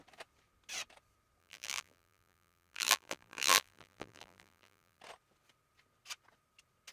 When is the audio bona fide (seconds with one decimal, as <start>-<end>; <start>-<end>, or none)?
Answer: 0.0-1.4; 5.0-6.9